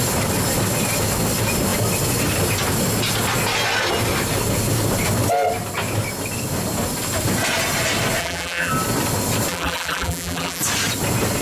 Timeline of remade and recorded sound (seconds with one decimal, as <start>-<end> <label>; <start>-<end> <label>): 0.0-8.2 recorded; 8.2-8.7 remade; 8.7-9.5 recorded; 9.5-10.6 remade; 10.6-11.4 recorded